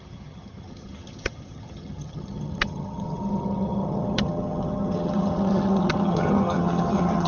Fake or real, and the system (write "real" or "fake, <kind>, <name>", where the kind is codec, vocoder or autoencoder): fake, vocoder, HiFi-GAN